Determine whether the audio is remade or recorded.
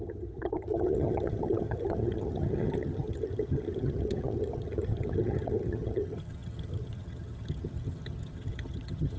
remade